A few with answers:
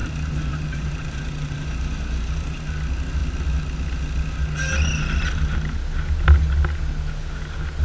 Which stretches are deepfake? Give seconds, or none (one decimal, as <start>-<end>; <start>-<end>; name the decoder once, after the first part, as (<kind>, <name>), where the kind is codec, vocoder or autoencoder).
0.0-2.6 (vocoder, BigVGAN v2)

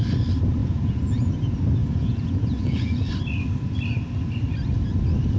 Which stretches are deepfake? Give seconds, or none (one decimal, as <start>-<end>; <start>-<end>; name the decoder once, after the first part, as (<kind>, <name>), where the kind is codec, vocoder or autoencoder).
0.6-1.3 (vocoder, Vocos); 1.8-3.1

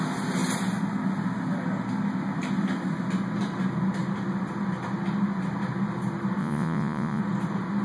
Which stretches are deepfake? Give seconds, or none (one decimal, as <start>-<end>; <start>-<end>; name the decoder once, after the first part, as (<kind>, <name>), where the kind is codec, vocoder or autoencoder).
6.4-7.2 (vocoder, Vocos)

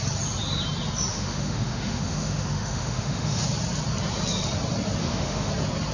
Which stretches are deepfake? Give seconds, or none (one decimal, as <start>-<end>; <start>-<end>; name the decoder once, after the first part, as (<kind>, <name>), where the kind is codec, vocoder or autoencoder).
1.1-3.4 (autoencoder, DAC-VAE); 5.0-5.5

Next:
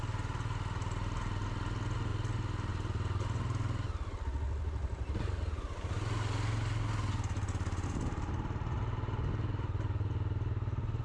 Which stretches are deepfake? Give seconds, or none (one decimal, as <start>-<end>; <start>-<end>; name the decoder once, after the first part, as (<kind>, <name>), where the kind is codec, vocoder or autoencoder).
none

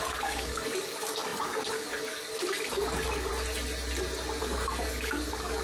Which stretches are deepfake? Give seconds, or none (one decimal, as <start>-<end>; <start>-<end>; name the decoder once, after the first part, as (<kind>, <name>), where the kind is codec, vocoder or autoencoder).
0.0-3.3 (codec, DAC); 4.4-5.6

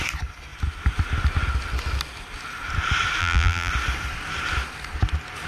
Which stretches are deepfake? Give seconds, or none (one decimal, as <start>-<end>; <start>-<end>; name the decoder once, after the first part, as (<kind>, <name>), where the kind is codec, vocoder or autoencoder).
3.2-3.7 (vocoder, BigVGAN v2)